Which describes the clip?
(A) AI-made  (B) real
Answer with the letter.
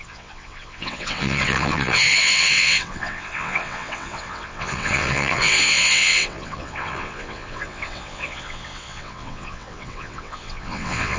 A